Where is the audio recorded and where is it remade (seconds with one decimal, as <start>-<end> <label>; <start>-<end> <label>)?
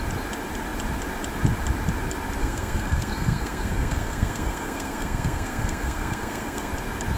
0.0-2.4 recorded; 2.4-6.7 remade; 6.7-7.2 recorded